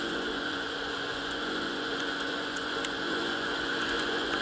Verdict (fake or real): fake